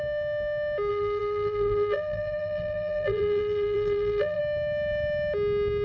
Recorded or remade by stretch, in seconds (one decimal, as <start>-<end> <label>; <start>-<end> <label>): 0.0-0.9 recorded; 0.9-4.4 remade; 4.4-5.8 recorded